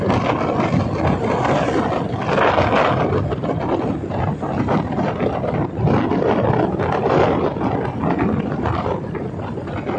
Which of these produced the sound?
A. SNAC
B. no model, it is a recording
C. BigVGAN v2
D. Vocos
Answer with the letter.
B